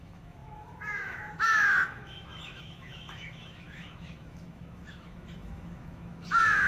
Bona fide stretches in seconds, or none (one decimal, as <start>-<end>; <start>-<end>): none